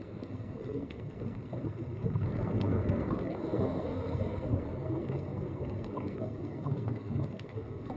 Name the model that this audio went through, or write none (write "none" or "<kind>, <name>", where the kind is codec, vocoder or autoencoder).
codec, SNAC